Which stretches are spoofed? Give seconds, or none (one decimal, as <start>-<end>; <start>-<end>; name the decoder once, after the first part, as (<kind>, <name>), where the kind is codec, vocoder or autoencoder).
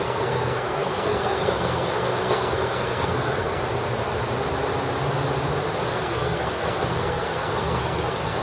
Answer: 0.0-3.6 (codec, SNAC); 5.9-8.4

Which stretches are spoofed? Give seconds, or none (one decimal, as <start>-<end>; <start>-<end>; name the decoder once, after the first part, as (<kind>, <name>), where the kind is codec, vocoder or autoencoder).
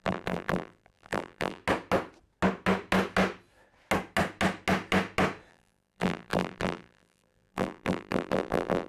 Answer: 0.0-1.6 (vocoder, BigVGAN v2); 5.5-8.9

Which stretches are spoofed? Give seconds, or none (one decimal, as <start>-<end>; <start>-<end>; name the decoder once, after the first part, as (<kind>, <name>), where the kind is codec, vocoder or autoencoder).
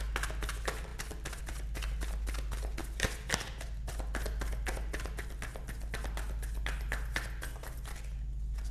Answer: none